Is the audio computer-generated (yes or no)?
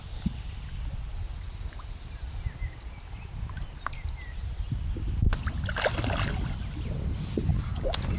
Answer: no